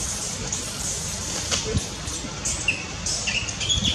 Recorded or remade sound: recorded